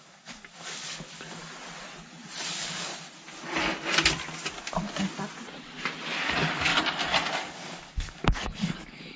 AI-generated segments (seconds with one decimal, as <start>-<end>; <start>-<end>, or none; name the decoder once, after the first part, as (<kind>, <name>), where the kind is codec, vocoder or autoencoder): 0.0-1.4 (codec, DAC); 2.5-2.9; 6.2-6.7; 7.5-9.2